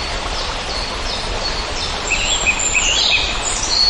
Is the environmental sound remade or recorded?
remade